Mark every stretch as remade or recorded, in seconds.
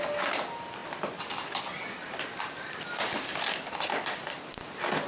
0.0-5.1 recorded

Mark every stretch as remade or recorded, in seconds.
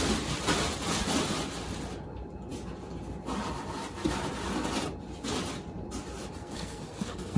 0.0-6.4 recorded; 6.4-7.4 remade